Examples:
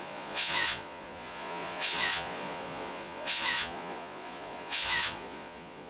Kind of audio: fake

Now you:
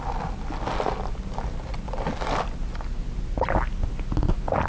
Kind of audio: real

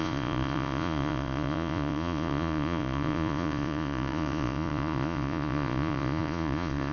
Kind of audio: fake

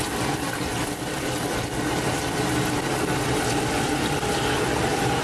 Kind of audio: real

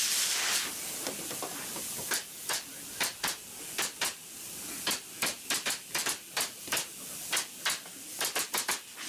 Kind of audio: real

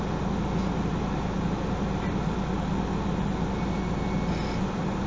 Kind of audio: real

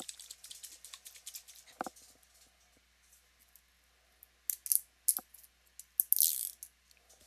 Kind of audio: real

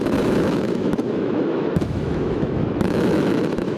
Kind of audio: fake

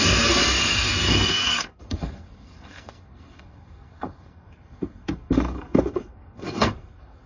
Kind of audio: fake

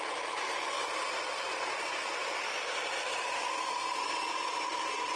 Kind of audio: real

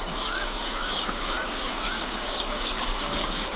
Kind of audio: fake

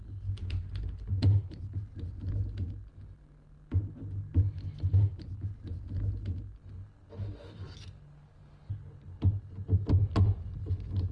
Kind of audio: real